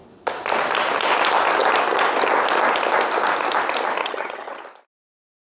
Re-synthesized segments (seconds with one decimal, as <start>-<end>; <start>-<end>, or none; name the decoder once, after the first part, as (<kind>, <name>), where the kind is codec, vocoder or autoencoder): 4.0-4.6 (vocoder, HiFi-GAN)